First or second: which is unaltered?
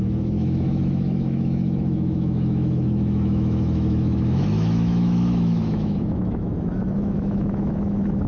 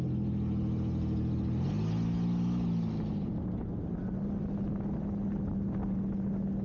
second